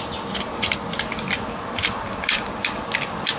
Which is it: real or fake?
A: real